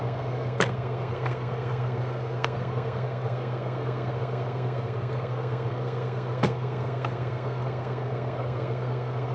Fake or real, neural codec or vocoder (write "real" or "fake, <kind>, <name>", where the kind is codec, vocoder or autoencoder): fake, codec, SNAC